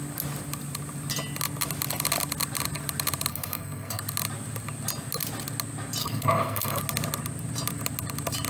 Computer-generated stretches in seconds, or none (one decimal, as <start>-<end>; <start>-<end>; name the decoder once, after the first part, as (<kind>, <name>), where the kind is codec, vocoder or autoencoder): 3.3-4.0 (codec, SNAC); 6.0-6.8